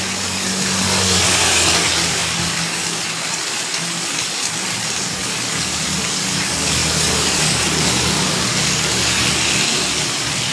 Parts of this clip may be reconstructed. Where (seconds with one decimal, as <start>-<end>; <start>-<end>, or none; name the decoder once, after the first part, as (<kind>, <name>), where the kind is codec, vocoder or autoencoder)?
0.0-10.5 (codec, DAC)